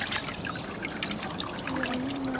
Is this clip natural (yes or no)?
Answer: yes